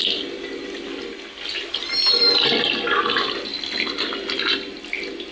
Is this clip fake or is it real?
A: real